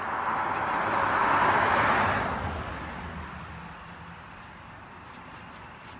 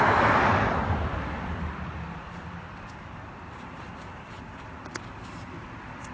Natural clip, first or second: first